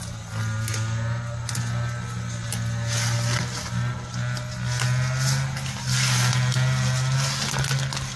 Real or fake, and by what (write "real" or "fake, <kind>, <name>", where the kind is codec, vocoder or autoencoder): real